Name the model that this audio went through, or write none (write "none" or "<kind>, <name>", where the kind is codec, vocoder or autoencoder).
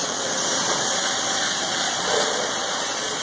vocoder, Vocos